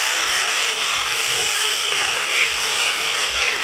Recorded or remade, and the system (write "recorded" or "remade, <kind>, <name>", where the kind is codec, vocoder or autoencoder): remade, codec, DAC